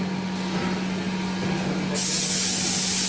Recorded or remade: recorded